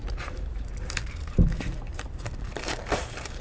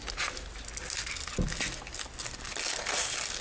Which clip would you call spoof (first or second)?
first